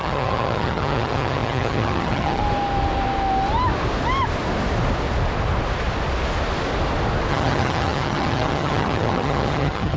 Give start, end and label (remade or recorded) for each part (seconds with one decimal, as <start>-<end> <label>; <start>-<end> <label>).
0.0-2.4 remade; 2.4-7.3 recorded; 7.3-10.0 remade